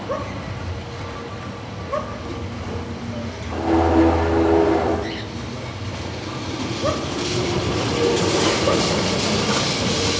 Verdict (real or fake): real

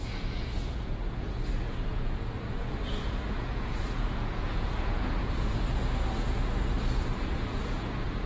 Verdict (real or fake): fake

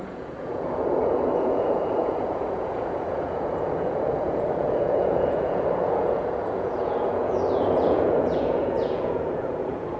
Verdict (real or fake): fake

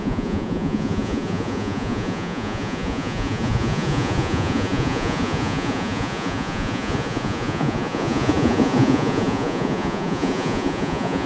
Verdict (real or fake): fake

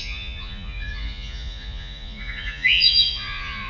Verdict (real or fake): fake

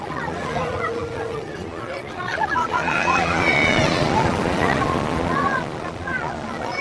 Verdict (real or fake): fake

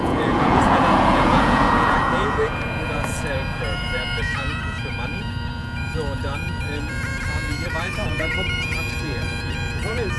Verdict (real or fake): fake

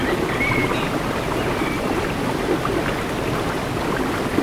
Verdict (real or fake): real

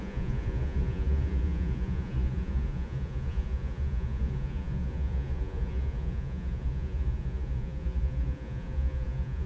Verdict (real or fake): fake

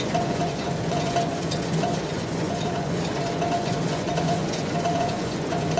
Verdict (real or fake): fake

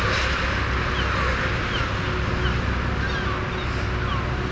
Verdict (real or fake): real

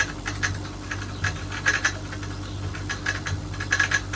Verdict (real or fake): real